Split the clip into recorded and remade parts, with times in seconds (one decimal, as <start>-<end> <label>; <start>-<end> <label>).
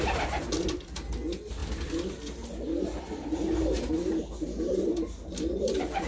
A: 0.0-6.1 recorded